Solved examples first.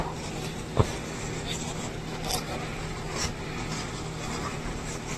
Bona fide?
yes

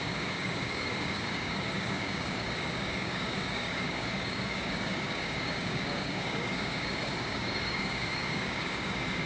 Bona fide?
no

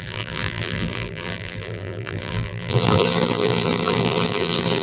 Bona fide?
no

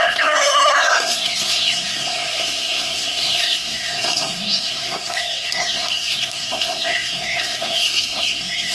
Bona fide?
no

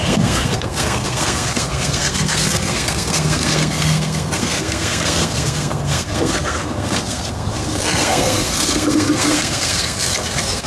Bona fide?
no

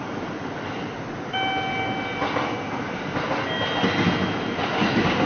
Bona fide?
yes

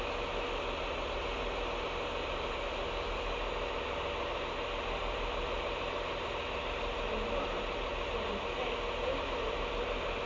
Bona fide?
yes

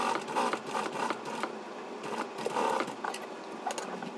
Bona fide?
yes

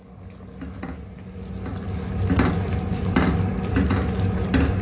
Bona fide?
yes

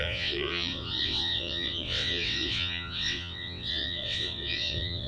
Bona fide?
no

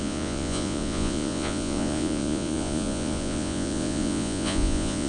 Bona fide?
no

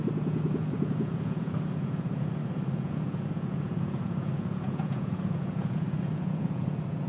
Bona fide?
no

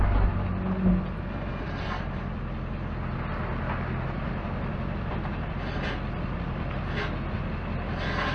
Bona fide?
yes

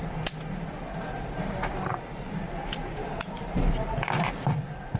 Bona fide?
yes